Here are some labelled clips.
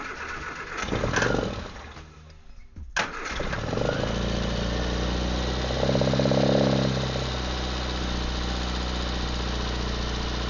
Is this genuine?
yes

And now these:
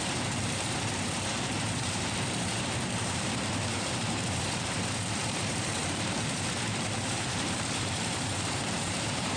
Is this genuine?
no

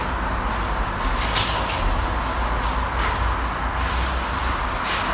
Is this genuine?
yes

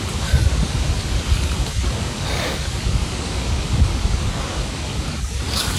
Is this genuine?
no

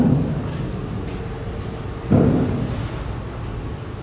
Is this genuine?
yes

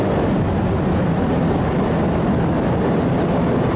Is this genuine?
yes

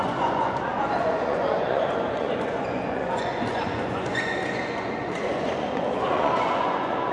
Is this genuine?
no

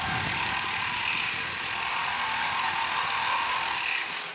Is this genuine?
yes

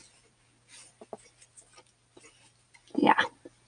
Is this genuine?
yes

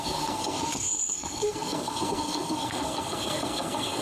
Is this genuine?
no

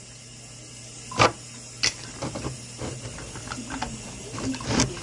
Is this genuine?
yes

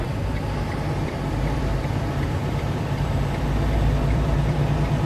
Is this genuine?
no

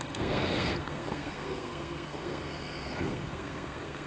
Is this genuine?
no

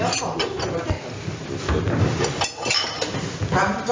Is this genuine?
yes